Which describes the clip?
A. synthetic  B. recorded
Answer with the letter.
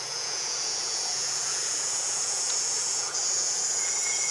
A